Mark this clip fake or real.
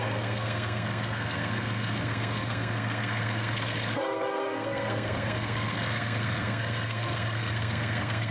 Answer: fake